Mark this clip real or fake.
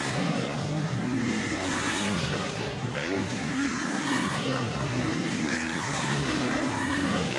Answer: fake